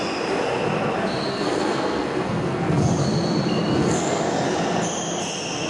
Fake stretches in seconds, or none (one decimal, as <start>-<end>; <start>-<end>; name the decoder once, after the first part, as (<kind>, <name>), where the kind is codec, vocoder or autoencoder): 1.3-2.9 (codec, SNAC); 3.7-4.2

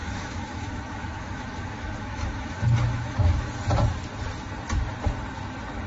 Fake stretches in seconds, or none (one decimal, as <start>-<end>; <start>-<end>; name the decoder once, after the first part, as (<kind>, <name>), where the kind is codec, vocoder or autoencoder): 0.0-3.5 (autoencoder, DAC-VAE)